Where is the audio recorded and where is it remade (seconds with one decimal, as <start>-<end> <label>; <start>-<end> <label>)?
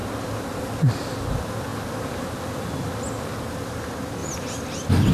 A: 0.0-5.1 recorded